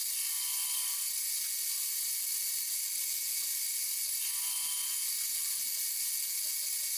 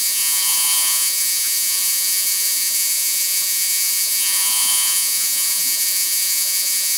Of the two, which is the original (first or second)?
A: first